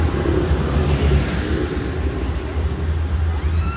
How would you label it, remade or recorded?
recorded